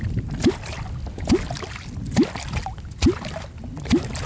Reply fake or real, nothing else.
real